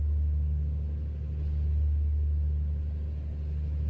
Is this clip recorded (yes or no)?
yes